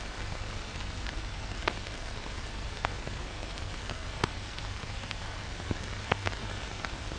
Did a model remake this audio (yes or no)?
yes